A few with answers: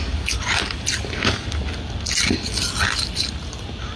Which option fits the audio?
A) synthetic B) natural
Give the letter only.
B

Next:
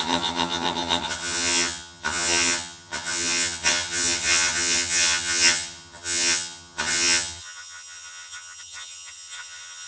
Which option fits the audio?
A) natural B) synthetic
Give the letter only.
B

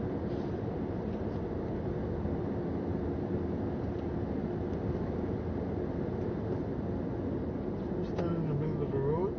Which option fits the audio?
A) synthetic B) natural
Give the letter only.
B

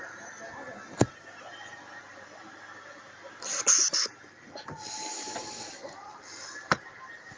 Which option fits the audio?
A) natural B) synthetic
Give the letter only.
A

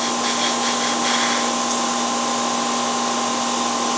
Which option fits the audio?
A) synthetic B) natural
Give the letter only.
B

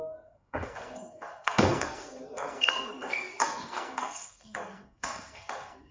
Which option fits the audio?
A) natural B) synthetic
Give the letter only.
B